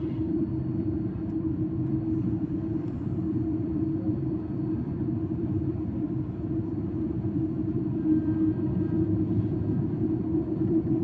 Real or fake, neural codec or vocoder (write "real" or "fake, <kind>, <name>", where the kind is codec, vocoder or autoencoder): fake, vocoder, BigVGAN v2